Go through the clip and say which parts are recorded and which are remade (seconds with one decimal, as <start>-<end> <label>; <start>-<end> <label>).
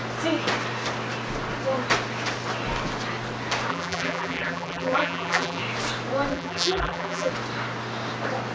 0.0-3.7 recorded; 3.7-5.6 remade; 5.6-6.3 recorded; 6.3-7.3 remade; 7.3-8.5 recorded